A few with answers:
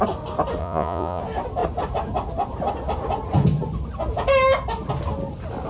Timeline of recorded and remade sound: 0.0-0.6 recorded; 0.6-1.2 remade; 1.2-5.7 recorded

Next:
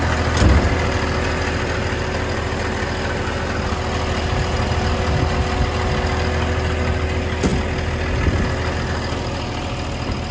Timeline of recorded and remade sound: 0.0-10.3 recorded

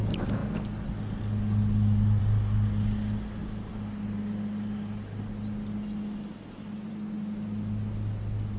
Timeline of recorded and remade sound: 0.0-8.6 recorded

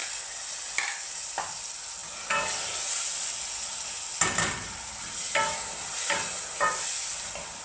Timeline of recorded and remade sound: 0.0-7.6 recorded

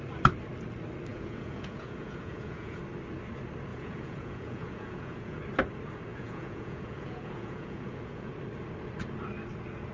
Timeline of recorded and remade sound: 0.0-1.1 recorded; 1.1-2.8 remade; 2.8-3.7 recorded; 3.7-5.4 remade; 5.4-6.1 recorded; 6.1-8.3 remade; 8.3-9.9 recorded

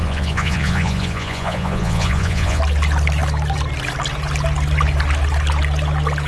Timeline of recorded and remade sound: 0.0-2.6 remade; 2.6-6.3 recorded

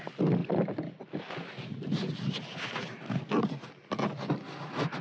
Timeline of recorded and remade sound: 0.0-5.0 recorded

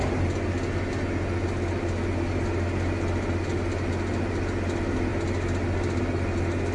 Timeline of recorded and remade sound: 0.0-6.7 recorded